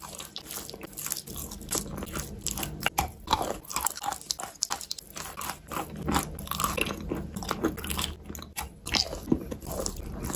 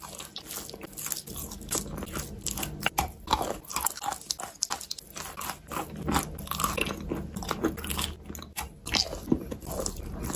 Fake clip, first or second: first